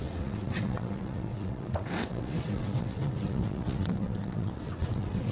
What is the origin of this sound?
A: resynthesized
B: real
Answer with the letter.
A